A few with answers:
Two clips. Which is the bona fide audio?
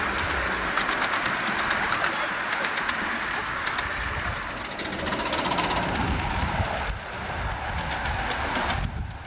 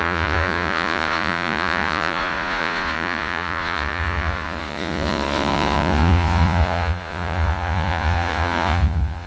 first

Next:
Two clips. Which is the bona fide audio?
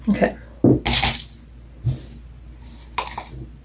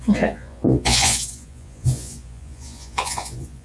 first